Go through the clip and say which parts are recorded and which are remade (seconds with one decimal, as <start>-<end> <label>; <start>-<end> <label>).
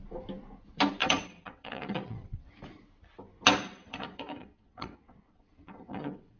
0.0-1.0 recorded; 1.0-2.5 remade; 2.5-3.8 recorded; 3.8-6.4 remade